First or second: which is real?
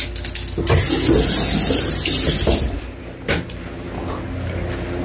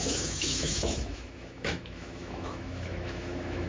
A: first